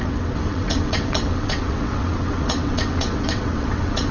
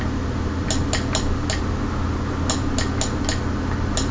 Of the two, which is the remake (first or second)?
first